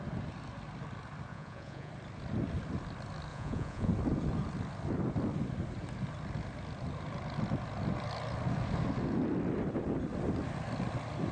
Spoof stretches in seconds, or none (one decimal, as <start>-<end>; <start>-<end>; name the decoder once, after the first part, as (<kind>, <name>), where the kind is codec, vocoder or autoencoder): 1.3-1.9 (vocoder, Vocos); 3.3-3.9